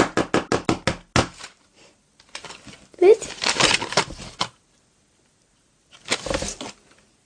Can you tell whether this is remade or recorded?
recorded